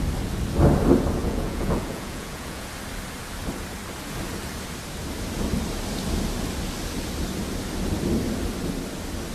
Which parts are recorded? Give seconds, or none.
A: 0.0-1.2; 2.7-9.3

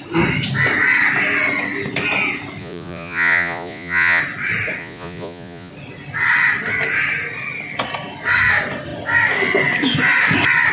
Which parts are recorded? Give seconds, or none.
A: 0.0-2.6; 4.2-4.8; 5.7-10.7